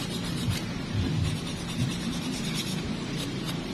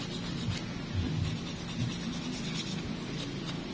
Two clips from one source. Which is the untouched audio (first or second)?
second